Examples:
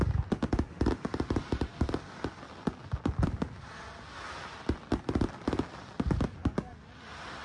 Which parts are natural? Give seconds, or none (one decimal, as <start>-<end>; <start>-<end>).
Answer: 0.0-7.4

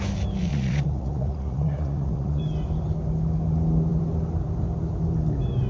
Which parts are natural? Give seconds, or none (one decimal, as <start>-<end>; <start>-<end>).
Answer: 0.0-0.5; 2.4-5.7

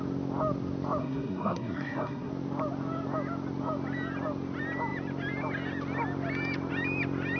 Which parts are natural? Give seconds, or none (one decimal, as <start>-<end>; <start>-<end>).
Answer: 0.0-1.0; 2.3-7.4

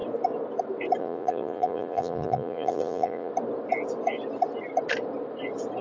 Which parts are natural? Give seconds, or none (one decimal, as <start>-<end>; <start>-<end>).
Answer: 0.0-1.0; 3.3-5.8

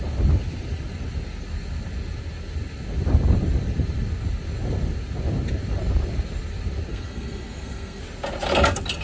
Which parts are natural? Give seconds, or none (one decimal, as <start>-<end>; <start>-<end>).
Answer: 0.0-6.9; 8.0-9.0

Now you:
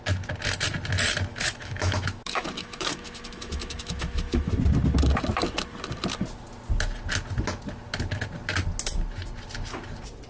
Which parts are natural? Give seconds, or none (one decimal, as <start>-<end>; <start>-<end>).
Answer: 0.0-1.3; 4.5-10.3

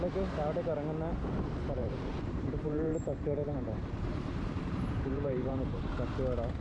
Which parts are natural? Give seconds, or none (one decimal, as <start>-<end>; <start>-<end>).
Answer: 0.0-1.8; 5.8-6.6

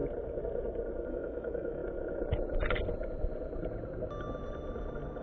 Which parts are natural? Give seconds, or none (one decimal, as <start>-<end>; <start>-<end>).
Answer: 0.0-1.1; 1.8-5.2